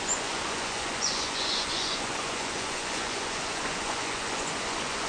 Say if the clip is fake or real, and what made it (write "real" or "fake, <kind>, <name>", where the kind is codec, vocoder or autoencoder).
fake, vocoder, Vocos